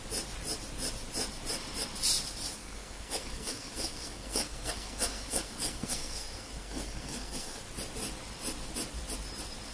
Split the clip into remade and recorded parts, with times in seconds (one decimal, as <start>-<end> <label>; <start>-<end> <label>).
0.0-2.6 recorded; 2.6-7.6 remade; 7.6-9.7 recorded